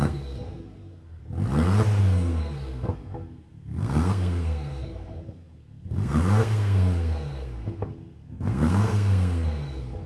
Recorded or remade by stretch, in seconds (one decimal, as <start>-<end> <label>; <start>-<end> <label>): 0.0-1.2 remade; 1.2-2.0 recorded; 2.0-10.1 remade